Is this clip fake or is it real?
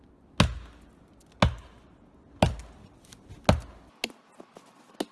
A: real